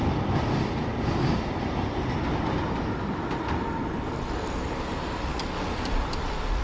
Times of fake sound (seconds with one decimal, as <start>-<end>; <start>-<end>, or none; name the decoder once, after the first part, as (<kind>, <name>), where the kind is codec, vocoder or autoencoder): none

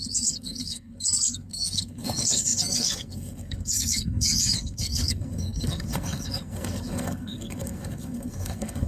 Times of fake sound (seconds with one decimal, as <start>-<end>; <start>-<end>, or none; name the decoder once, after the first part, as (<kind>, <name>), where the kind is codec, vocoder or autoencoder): 0.0-8.9 (codec, SNAC)